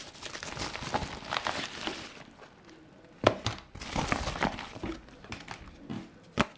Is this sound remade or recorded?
recorded